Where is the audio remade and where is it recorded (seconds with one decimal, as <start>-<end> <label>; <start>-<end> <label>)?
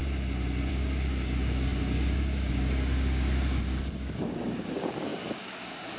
0.0-0.7 recorded; 0.7-6.0 remade